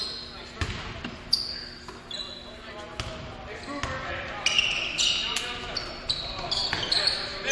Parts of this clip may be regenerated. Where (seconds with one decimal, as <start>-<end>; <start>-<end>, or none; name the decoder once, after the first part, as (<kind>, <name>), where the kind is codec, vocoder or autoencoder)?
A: none